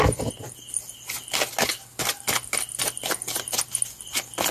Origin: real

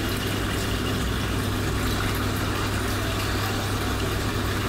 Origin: real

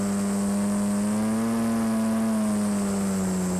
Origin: real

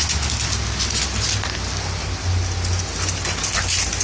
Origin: real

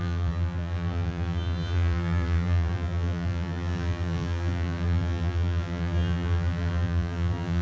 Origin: fake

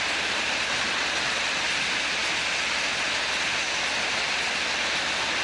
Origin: real